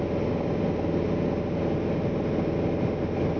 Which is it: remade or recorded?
recorded